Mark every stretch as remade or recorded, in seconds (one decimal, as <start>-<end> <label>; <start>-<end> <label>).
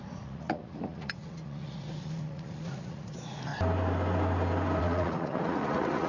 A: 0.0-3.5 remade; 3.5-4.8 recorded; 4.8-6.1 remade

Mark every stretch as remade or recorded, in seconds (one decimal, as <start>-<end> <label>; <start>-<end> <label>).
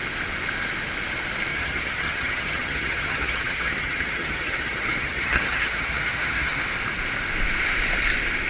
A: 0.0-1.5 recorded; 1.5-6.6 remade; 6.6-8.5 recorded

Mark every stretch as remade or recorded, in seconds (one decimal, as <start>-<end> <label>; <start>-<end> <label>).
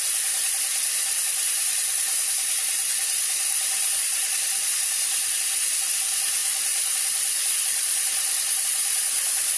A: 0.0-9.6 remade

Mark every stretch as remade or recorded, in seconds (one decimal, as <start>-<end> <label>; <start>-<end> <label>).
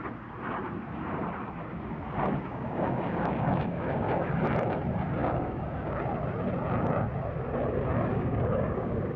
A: 0.0-2.5 recorded; 2.5-4.3 remade; 4.3-5.2 recorded; 5.2-6.0 remade; 6.0-8.1 recorded; 8.1-9.2 remade